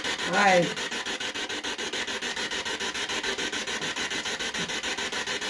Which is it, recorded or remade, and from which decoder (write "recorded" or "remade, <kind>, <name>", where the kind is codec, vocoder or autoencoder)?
recorded